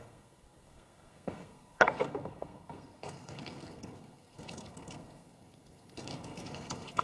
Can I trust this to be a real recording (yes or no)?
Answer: no